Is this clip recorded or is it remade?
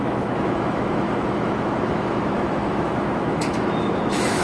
remade